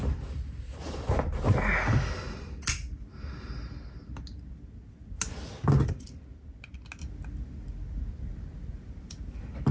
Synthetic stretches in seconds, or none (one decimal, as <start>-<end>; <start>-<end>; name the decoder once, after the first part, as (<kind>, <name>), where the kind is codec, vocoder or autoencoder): none